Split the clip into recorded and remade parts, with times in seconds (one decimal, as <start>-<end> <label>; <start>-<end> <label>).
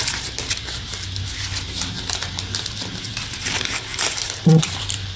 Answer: 0.0-3.9 recorded; 3.9-5.2 remade